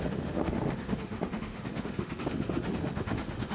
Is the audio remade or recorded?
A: remade